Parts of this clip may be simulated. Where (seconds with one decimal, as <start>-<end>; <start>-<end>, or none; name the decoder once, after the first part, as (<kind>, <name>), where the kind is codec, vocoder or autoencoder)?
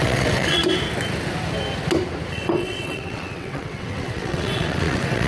0.0-0.6 (vocoder, WaveNeXt); 2.3-5.3